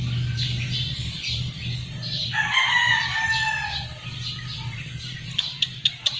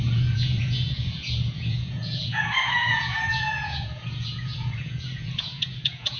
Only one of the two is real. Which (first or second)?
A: first